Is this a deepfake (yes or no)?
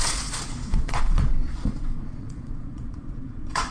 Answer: yes